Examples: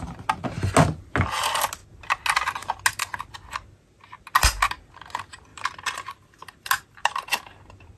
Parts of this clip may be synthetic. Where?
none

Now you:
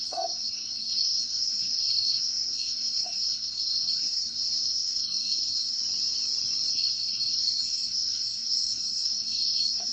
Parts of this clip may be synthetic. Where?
0.0-5.8 (codec, SNAC); 6.7-9.9

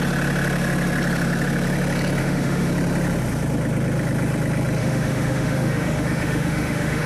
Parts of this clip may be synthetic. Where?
2.2-2.7 (autoencoder, DAC-VAE); 4.8-7.1

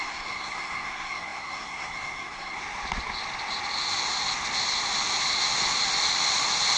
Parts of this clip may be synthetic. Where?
0.0-2.6 (codec, SNAC)

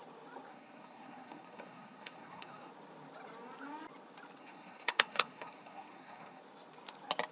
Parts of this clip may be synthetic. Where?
0.5-2.7 (codec, SNAC); 4.4-6.4

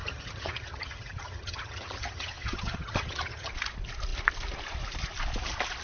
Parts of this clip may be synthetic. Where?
0.0-3.5 (vocoder, HiFi-GAN)

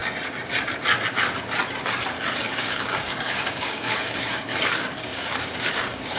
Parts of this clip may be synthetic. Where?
2.5-6.2 (codec, DAC)